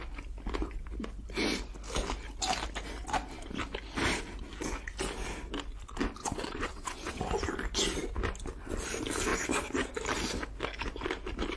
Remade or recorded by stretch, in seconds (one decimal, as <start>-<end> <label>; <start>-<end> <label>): 0.0-6.2 recorded; 6.2-7.2 remade; 7.2-11.6 recorded

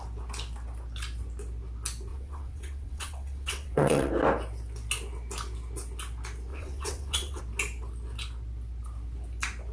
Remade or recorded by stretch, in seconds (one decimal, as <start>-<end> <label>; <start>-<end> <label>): 0.0-2.1 recorded; 2.1-4.1 remade; 4.1-6.5 recorded; 6.5-7.4 remade; 7.4-9.7 recorded

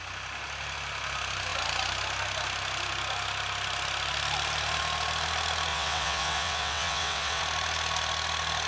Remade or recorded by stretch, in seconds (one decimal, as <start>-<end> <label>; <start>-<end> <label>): 0.0-5.7 recorded; 5.7-7.4 remade; 7.4-8.7 recorded

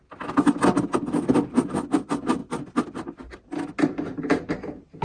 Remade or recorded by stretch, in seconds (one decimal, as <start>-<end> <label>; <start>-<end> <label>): 0.0-5.0 recorded

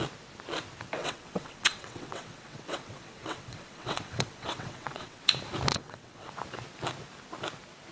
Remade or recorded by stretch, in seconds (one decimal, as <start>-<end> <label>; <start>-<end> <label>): 0.0-1.0 recorded; 1.0-5.2 remade; 5.2-5.7 recorded; 5.7-6.3 remade; 6.3-7.9 recorded

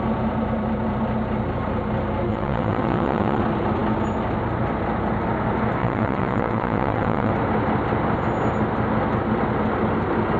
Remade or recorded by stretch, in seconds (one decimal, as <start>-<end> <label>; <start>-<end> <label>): 0.0-2.3 recorded; 2.3-3.4 remade; 3.4-5.8 recorded; 5.8-7.3 remade; 7.3-10.4 recorded

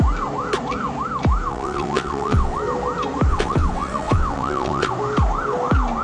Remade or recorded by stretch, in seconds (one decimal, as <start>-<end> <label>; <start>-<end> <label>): 0.0-1.5 recorded; 1.5-2.6 remade; 2.6-3.3 recorded; 3.3-4.9 remade; 4.9-6.0 recorded